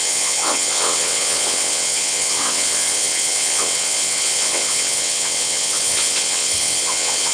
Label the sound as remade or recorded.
remade